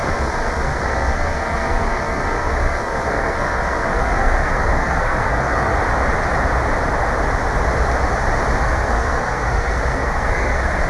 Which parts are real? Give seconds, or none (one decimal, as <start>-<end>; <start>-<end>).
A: 5.7-8.6